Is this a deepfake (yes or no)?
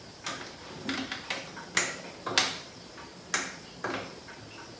no